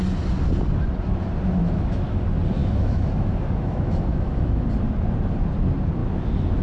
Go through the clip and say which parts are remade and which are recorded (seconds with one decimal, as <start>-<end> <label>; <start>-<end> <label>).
0.0-1.6 recorded; 1.6-2.2 remade; 2.2-2.6 recorded; 2.6-4.7 remade; 4.7-6.6 recorded